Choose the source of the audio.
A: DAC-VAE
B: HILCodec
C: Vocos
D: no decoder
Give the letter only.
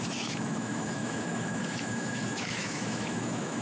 A